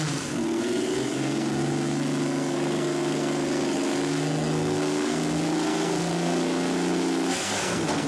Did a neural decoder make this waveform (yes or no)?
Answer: yes